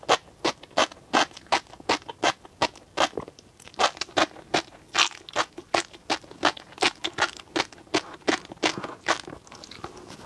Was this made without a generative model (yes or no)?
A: yes